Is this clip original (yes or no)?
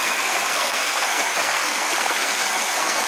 no